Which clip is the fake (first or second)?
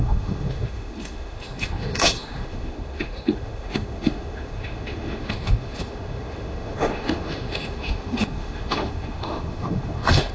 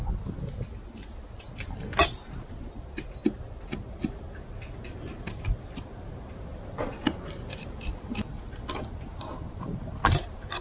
first